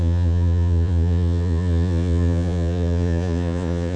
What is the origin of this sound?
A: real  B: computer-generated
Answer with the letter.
B